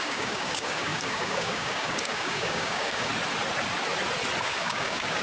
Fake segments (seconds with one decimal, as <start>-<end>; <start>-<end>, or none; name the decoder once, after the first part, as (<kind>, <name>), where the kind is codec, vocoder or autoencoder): 0.0-3.1 (codec, DAC); 4.4-5.2